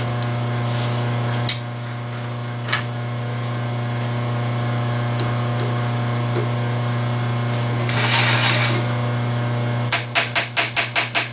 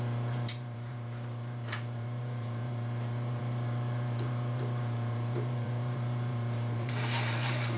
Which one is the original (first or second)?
first